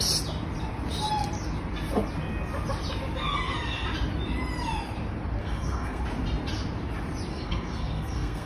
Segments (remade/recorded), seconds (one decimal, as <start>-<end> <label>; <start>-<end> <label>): 0.0-5.4 recorded; 5.4-6.0 remade; 6.0-7.3 recorded; 7.3-8.5 remade